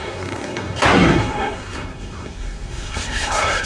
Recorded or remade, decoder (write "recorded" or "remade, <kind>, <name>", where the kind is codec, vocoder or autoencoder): remade, codec, SNAC